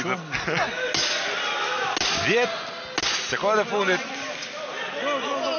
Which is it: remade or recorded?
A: recorded